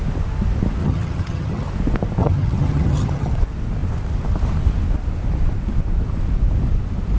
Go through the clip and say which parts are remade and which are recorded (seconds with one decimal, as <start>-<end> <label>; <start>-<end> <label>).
0.0-0.8 recorded; 0.8-1.7 remade; 1.7-2.2 recorded; 2.2-3.3 remade; 3.3-7.2 recorded